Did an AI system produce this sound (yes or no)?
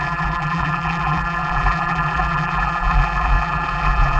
yes